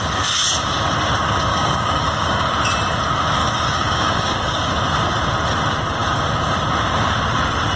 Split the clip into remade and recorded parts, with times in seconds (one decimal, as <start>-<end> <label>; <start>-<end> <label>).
0.0-1.5 recorded; 1.5-2.5 remade; 2.5-3.4 recorded; 3.4-4.7 remade; 4.7-7.8 recorded

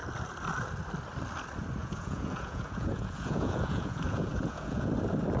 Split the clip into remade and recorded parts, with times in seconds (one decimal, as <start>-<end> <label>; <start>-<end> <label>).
0.0-1.8 recorded; 1.8-4.9 remade; 4.9-5.4 recorded

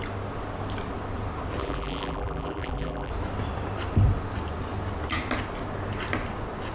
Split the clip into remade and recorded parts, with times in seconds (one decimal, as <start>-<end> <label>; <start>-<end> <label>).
0.0-1.6 recorded; 1.6-3.1 remade; 3.1-6.7 recorded

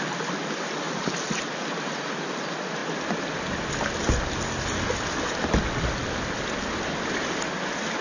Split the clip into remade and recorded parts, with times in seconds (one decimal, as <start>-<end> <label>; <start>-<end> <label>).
0.0-8.0 recorded

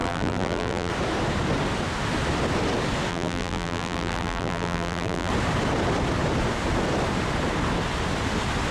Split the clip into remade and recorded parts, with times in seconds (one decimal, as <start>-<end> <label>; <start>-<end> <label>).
0.0-0.9 remade; 0.9-3.1 recorded; 3.1-5.3 remade; 5.3-8.7 recorded

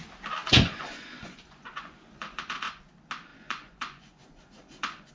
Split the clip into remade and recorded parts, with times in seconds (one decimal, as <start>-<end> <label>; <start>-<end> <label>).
0.0-0.4 recorded; 0.4-2.8 remade; 2.8-3.3 recorded; 3.3-5.1 remade